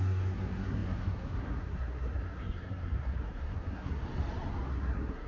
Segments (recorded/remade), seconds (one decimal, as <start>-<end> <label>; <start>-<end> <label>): 0.0-4.0 remade; 4.0-4.7 recorded; 4.7-5.3 remade